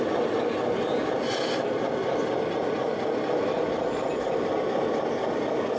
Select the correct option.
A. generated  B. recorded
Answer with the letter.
B